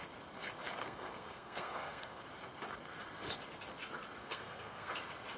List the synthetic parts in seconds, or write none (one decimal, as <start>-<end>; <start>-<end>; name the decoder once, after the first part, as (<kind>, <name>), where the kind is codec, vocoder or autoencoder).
0.8-2.2 (codec, SNAC); 4.2-4.9